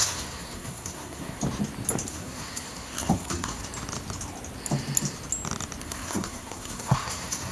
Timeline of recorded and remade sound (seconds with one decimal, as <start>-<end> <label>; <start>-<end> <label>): 0.0-1.4 remade; 1.4-2.1 recorded; 2.1-3.6 remade; 3.6-5.8 recorded; 5.8-7.5 remade